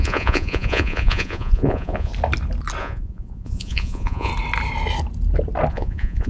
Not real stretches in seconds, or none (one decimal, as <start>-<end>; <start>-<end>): 0.0-2.1; 2.8-4.3; 5.7-6.3